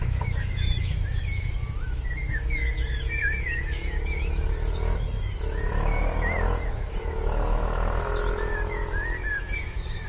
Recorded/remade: remade